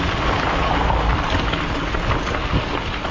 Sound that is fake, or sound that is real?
real